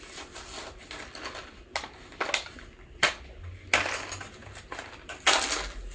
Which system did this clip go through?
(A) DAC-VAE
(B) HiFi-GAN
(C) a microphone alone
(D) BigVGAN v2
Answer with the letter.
C